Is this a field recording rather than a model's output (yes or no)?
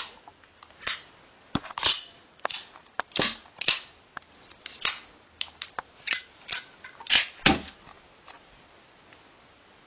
yes